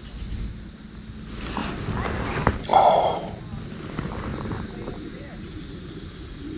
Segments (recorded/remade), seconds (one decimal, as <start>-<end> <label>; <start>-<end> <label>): 0.0-2.7 recorded; 2.7-3.4 remade; 3.4-4.3 recorded; 4.3-5.9 remade; 5.9-6.6 recorded